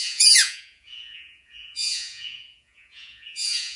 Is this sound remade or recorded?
remade